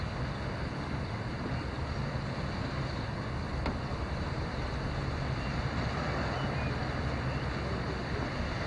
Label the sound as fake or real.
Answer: real